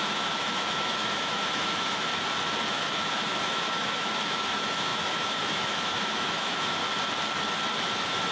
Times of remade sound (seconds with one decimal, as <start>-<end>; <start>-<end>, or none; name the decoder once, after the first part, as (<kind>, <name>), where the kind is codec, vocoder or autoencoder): 0.0-2.1 (autoencoder, DAC-VAE); 2.7-6.8; 7.8-8.3